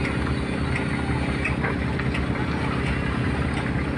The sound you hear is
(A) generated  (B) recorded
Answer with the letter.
B